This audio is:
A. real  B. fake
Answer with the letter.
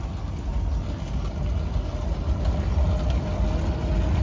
A